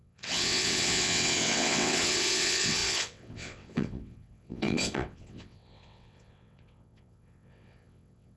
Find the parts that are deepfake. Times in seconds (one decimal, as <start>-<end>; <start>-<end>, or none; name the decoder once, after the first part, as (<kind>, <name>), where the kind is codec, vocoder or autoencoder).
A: 0.0-8.4 (vocoder, WaveNeXt)